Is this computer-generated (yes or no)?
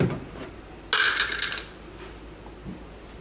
no